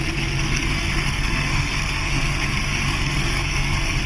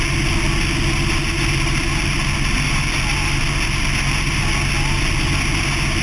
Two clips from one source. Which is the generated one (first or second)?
first